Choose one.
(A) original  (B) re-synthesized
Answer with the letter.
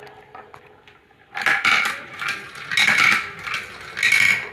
A